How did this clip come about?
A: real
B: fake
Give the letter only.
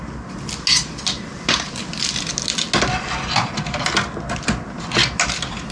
A